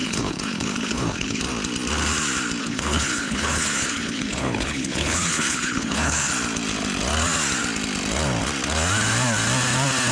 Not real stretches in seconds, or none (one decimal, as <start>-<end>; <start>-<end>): 0.0-1.4; 2.6-6.3